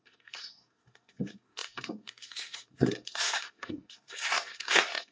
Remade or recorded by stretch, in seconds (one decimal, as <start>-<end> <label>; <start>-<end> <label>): 0.0-5.1 remade